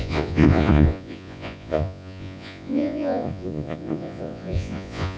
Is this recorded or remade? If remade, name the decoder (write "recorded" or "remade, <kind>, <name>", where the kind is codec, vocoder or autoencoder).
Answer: remade, vocoder, Vocos